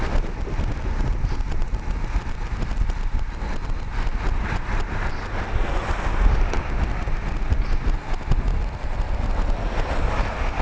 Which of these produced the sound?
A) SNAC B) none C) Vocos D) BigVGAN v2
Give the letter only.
B